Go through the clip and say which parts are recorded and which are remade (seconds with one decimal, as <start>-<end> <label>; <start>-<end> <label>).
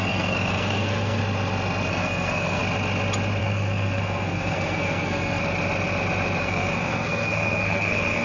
0.0-1.2 remade; 1.2-1.9 recorded; 1.9-2.6 remade; 2.6-3.4 recorded; 3.4-5.4 remade; 5.4-6.4 recorded; 6.4-8.2 remade